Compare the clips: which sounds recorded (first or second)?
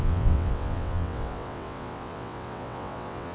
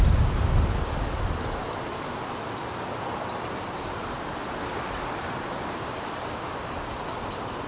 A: second